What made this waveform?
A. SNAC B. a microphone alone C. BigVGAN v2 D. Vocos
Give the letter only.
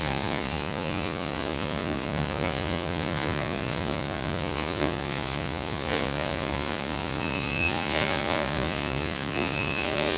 D